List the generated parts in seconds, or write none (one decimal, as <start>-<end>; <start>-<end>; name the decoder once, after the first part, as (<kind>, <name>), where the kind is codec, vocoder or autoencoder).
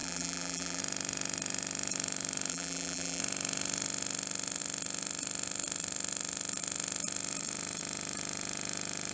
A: 0.0-0.8 (vocoder, BigVGAN v2); 2.5-3.2